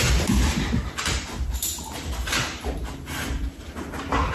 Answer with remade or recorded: recorded